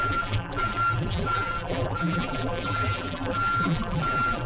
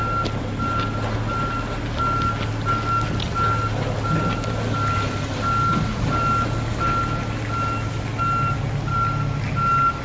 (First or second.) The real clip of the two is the second